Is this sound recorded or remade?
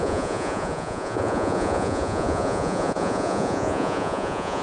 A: remade